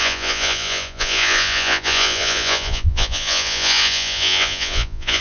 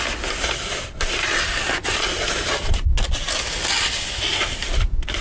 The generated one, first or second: first